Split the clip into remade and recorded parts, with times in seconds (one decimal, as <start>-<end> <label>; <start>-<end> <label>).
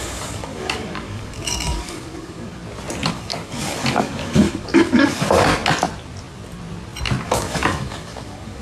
0.0-2.6 remade; 2.6-3.1 recorded; 3.1-5.5 remade; 5.5-7.2 recorded; 7.2-8.6 remade